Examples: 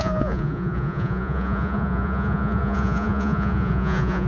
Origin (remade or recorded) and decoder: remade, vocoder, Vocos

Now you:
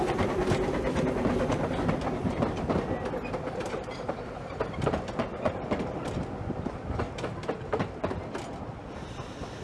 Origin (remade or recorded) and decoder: recorded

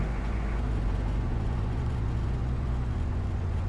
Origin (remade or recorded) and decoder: remade, vocoder, Vocos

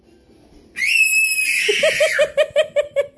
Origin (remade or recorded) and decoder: recorded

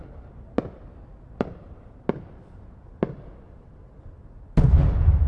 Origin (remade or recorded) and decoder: recorded